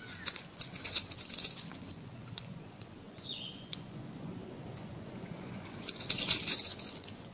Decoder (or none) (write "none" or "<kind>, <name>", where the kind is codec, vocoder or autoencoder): vocoder, Vocos